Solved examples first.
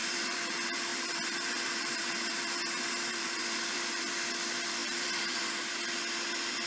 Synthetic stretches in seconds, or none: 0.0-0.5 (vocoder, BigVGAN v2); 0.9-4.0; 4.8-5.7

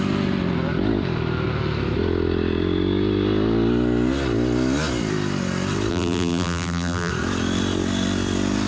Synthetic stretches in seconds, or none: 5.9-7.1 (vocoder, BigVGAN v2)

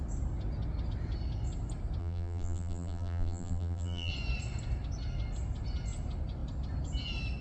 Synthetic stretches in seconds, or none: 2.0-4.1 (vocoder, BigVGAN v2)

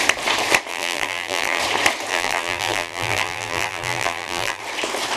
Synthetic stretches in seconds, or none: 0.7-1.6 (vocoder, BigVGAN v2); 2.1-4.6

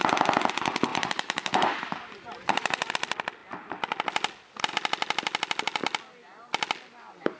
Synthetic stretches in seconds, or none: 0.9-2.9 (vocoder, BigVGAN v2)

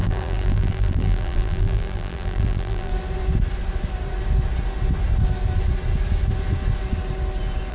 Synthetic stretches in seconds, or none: 0.0-2.9 (vocoder, BigVGAN v2)